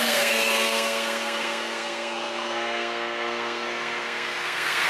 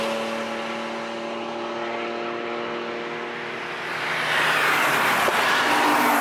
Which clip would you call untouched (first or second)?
second